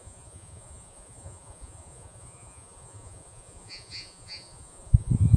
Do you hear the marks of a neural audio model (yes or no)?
yes